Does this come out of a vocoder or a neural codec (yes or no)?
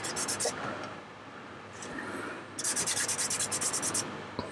no